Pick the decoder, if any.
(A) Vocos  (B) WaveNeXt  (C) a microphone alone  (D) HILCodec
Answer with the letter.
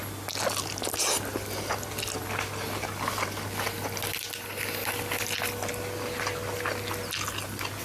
C